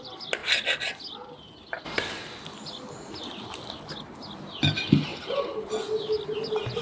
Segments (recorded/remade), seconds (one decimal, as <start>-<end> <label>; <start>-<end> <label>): 0.0-6.8 recorded